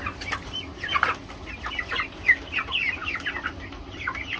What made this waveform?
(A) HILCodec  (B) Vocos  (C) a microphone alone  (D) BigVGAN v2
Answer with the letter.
C